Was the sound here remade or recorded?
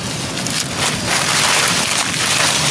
recorded